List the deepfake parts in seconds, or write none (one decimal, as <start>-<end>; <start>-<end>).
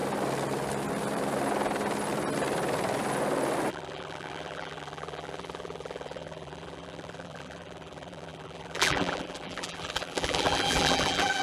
3.7-11.4